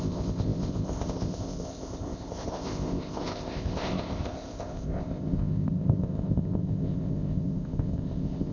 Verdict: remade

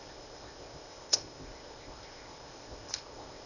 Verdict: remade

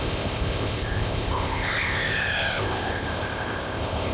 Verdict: remade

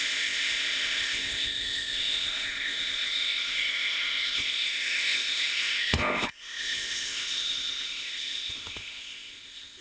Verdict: remade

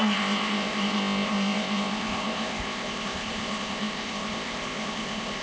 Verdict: remade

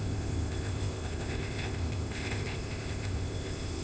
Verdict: remade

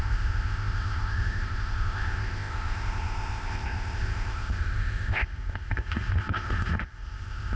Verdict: remade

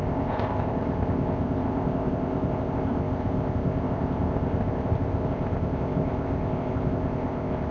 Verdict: remade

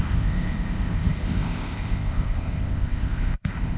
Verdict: remade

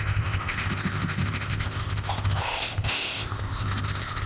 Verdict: remade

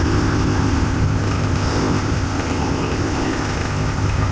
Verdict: remade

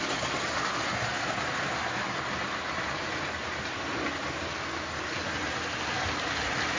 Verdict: recorded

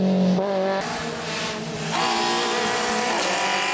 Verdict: recorded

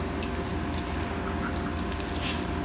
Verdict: recorded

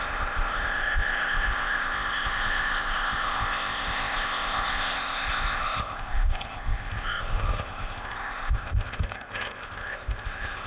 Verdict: remade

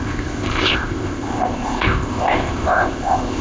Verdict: remade